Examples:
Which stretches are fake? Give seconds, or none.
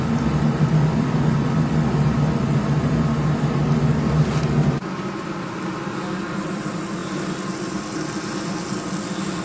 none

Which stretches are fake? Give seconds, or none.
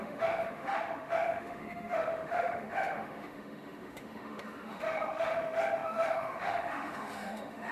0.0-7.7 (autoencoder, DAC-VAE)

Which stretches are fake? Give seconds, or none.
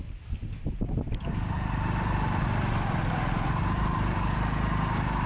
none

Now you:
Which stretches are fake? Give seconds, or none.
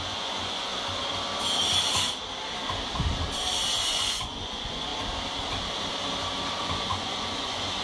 0.0-0.7 (vocoder, Vocos); 3.7-4.9; 6.6-7.8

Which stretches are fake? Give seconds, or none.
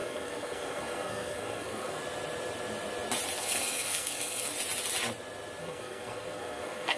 0.0-2.0 (codec, SNAC); 3.4-4.5; 5.6-7.0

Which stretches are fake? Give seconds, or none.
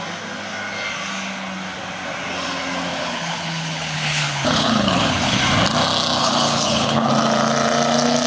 2.9-5.4 (codec, HILCodec); 6.2-7.1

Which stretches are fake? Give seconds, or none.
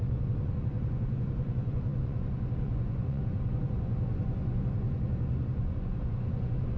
0.0-6.8 (vocoder, Vocos)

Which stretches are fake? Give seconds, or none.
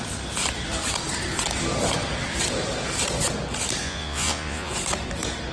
3.8-4.7 (vocoder, Vocos)